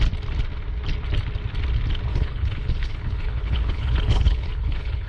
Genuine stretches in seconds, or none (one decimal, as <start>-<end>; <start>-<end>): 0.0-2.1